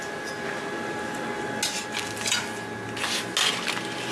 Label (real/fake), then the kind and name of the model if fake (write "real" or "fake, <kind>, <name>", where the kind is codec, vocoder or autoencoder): real